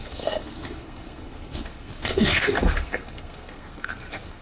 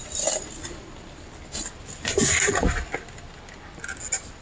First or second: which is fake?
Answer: first